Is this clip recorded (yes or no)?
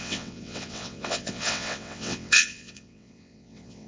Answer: no